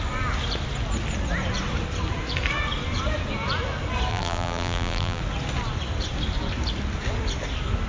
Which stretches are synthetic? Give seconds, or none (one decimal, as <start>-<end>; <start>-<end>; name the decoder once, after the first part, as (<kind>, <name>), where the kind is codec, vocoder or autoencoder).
4.1-5.2 (vocoder, BigVGAN v2)